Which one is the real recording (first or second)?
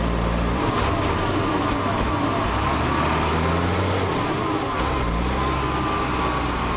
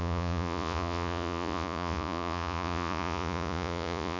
first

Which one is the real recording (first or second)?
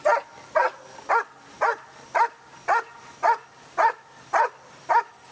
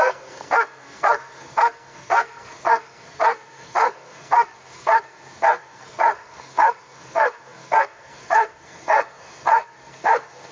first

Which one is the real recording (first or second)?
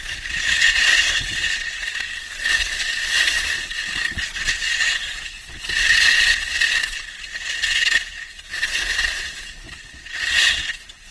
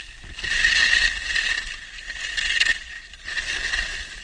second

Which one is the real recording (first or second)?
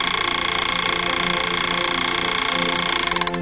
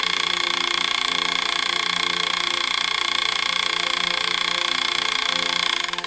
first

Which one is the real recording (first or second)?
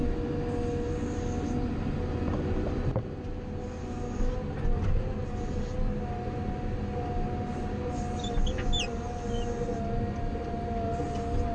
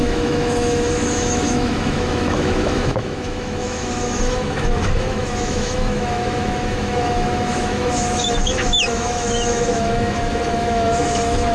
first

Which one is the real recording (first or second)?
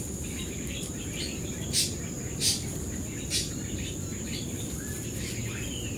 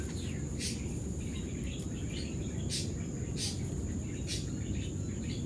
second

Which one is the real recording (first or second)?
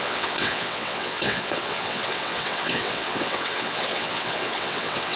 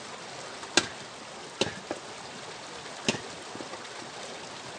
second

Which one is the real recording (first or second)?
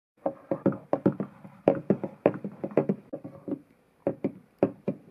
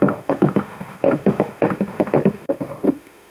first